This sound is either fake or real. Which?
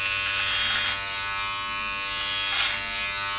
real